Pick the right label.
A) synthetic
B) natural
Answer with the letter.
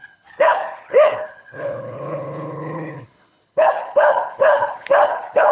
A